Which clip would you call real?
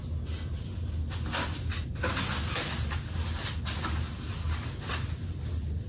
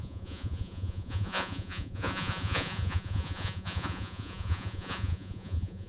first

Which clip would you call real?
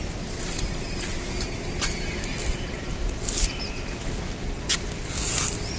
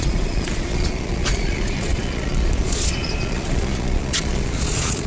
first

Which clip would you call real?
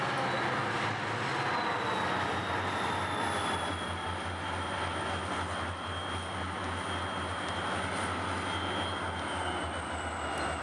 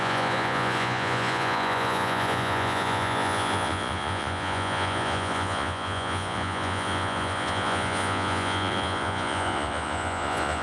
first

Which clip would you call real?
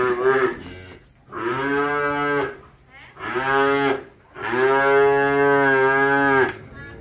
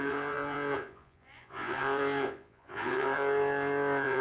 first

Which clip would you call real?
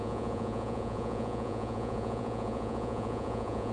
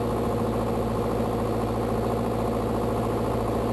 second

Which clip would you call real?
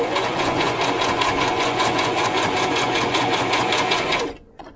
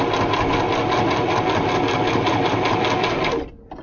second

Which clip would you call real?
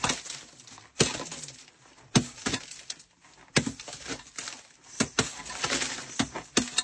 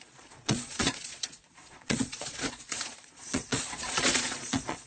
first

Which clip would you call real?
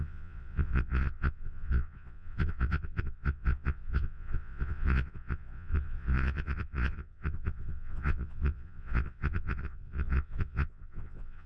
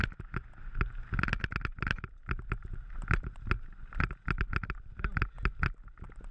second